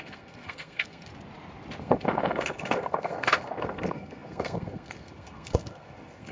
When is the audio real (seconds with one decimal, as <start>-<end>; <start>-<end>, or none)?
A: 1.1-1.8